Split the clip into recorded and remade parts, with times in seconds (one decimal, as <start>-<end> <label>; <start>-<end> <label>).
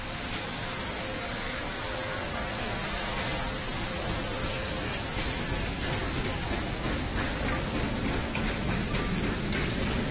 0.0-4.9 recorded; 4.9-8.8 remade; 8.8-10.1 recorded